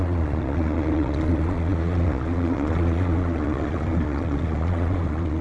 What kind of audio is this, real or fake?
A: fake